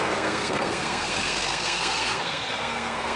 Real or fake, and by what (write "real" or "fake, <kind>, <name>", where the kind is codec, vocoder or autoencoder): fake, codec, SNAC